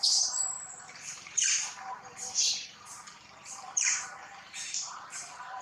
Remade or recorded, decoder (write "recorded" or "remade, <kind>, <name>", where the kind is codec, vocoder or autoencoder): remade, vocoder, BigVGAN v2